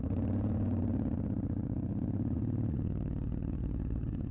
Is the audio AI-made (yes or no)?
yes